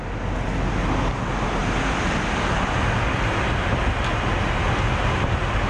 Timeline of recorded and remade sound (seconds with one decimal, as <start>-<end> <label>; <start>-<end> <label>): 0.0-5.7 recorded

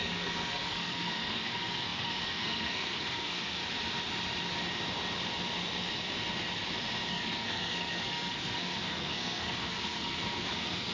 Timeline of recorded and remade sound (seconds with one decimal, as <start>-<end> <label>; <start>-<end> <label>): 0.0-3.6 remade; 3.6-7.1 recorded; 7.1-10.9 remade

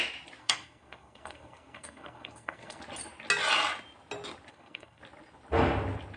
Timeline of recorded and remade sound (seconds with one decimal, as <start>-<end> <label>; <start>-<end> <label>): 0.0-0.4 recorded; 0.4-2.8 remade; 2.8-4.5 recorded; 4.5-5.0 remade; 5.0-6.2 recorded

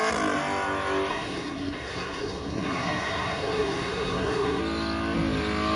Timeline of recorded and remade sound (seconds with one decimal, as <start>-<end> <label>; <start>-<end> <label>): 0.0-1.1 recorded; 1.1-4.6 remade; 4.6-5.8 recorded

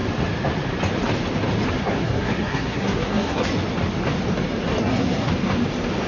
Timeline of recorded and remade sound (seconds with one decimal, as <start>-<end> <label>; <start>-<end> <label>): 0.0-1.7 recorded; 1.7-3.5 remade; 3.5-4.8 recorded; 4.8-5.3 remade; 5.3-6.1 recorded

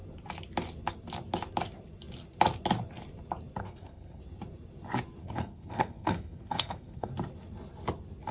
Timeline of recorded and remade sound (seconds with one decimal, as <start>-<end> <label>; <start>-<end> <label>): 0.0-3.6 recorded; 3.6-4.2 remade; 4.2-5.2 recorded; 5.2-7.1 remade; 7.1-8.3 recorded

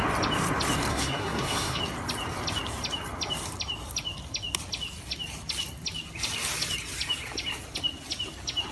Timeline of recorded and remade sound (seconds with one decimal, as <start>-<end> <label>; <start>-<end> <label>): 0.0-0.9 recorded; 0.9-1.8 remade; 1.8-8.7 recorded